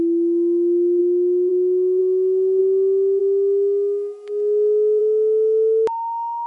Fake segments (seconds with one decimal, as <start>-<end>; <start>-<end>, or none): 2.0-2.6; 3.2-5.0

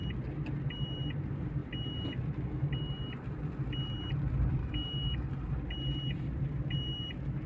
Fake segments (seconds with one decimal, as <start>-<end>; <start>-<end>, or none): 4.6-5.3

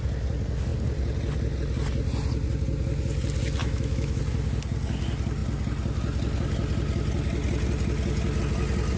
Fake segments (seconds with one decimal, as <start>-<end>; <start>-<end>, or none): 3.6-4.2